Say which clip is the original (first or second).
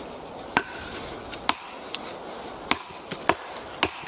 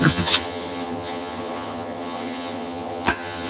first